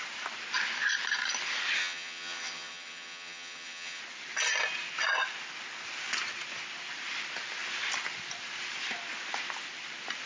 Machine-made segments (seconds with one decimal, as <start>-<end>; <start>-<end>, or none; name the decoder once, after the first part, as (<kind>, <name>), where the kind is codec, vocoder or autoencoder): 1.8-4.0 (vocoder, HiFi-GAN)